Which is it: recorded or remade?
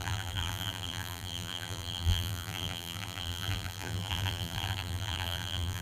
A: remade